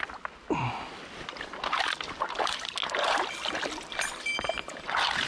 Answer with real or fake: real